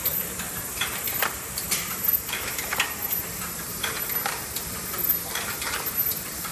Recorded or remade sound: remade